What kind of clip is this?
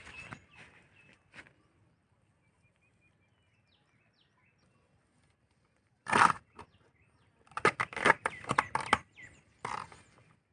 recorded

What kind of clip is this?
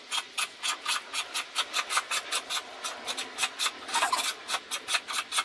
recorded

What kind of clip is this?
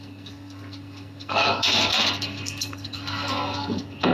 remade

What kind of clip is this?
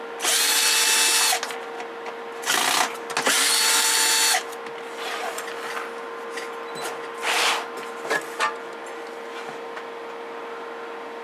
recorded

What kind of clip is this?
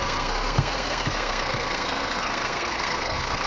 remade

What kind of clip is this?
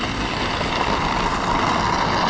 recorded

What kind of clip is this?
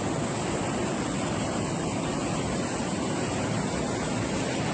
recorded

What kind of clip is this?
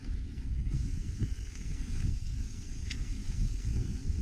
remade